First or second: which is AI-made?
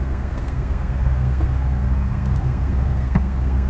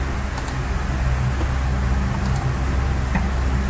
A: first